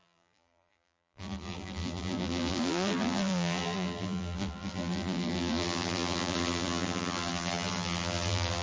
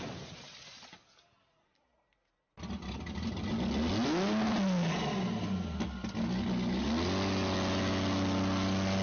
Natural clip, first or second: second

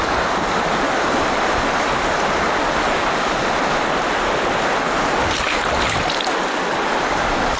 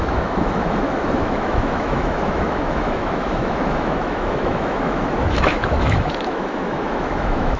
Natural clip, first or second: first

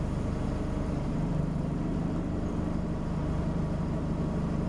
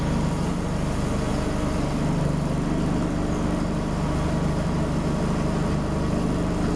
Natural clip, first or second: second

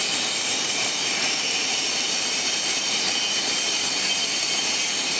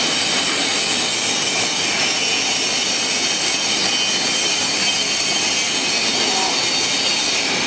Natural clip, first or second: second